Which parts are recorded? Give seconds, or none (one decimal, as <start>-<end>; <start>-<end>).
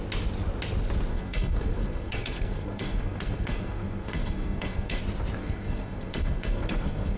0.0-1.1; 5.0-5.4